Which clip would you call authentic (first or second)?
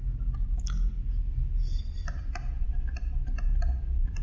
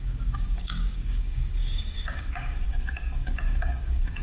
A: first